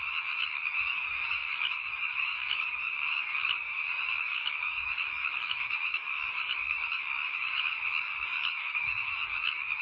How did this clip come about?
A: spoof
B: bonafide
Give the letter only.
A